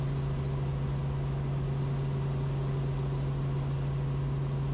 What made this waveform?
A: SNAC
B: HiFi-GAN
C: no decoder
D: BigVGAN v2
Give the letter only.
C